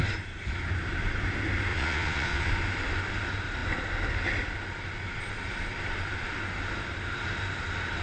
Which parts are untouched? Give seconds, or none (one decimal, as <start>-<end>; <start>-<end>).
0.0-1.7; 2.5-8.0